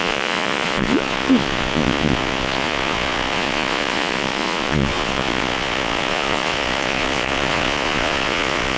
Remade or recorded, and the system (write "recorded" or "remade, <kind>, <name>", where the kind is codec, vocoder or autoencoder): remade, vocoder, Vocos